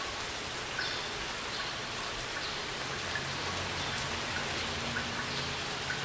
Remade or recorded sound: recorded